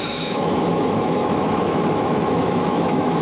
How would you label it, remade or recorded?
remade